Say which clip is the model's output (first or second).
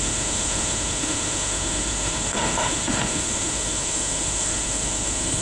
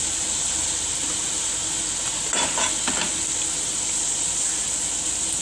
first